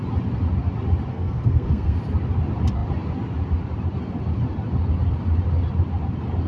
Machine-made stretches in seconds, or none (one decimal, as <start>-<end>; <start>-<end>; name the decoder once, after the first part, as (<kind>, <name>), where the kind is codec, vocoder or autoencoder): 1.1-2.0 (codec, SNAC)